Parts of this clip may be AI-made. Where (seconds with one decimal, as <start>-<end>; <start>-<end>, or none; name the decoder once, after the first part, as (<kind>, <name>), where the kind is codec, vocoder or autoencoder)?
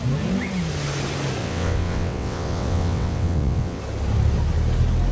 1.4-3.8 (vocoder, WaveNeXt)